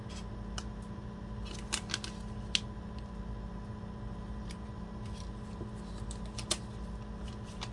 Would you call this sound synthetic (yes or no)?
no